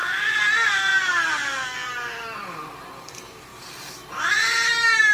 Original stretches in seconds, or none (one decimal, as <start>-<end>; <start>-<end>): 3.5-4.3